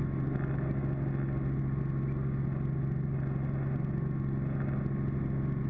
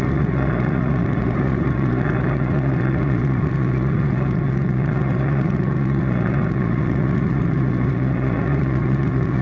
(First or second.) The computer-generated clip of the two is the second